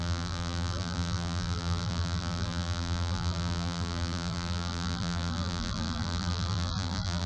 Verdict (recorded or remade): remade